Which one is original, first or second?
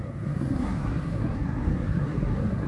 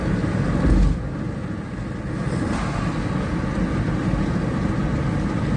second